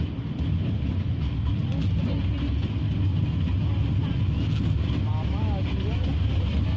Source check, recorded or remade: recorded